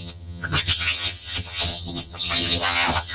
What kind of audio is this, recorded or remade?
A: remade